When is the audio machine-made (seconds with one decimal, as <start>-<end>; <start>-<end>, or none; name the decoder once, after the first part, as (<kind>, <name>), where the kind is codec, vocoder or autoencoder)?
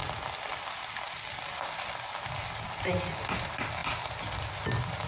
none